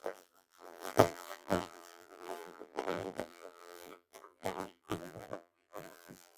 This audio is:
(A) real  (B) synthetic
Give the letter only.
B